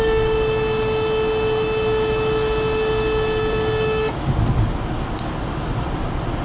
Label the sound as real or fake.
real